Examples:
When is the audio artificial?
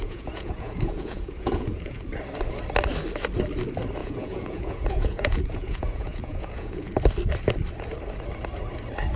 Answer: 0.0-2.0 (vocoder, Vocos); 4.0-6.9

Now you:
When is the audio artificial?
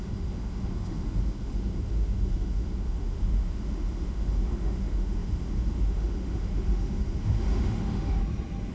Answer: 0.0-8.2 (autoencoder, DAC-VAE)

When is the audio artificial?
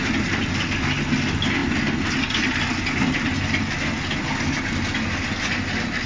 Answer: none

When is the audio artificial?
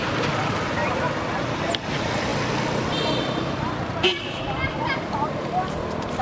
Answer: none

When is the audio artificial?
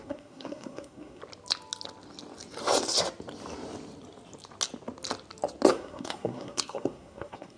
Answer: 0.0-1.2 (codec, SNAC); 5.7-7.6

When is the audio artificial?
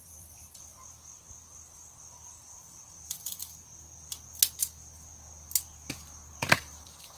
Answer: 0.0-0.7 (vocoder, BigVGAN v2); 2.0-3.4; 6.3-7.2